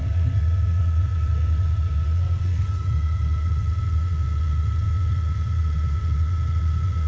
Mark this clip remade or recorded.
remade